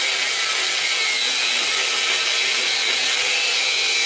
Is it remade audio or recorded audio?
recorded